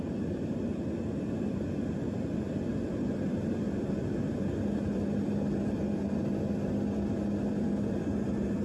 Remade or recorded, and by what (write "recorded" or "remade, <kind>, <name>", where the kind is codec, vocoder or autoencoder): recorded